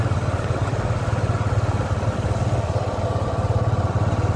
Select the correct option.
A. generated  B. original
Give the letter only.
B